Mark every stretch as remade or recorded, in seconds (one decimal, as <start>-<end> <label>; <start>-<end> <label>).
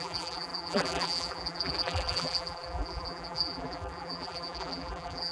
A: 0.0-5.3 remade